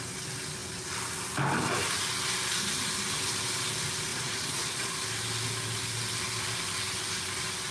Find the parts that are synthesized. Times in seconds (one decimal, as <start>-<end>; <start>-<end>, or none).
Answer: 4.1-4.9